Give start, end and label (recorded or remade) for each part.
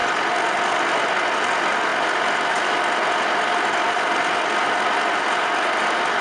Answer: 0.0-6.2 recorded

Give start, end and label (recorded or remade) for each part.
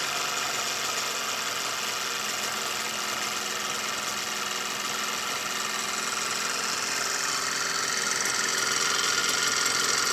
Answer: 0.0-10.1 recorded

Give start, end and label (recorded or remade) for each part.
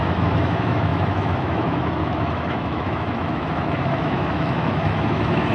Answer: 0.0-5.5 remade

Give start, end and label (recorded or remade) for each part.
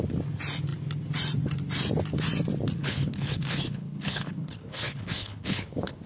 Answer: 0.0-2.8 recorded; 2.8-6.1 remade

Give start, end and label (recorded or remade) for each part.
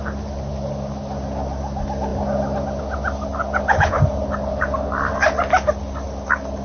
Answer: 0.0-6.6 recorded